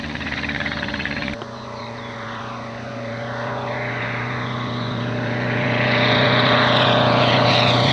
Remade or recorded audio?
remade